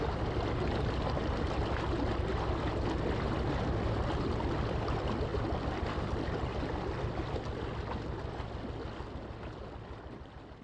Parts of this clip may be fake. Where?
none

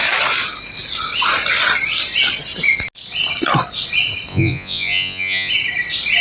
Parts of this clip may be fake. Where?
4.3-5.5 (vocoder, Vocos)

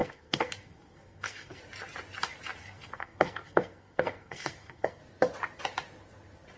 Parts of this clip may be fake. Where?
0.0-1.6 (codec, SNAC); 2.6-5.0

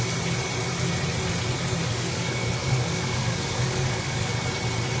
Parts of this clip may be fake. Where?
1.8-4.3 (codec, DAC)

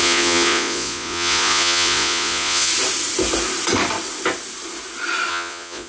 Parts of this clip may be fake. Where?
0.0-2.7 (vocoder, Vocos); 5.3-5.9